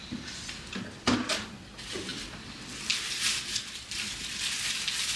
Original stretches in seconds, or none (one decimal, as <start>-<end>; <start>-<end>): 0.0-5.2